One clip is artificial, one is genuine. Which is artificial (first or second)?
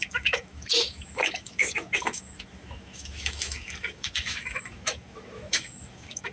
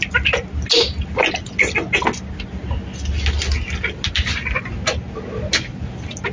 first